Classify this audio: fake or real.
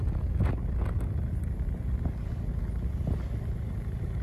real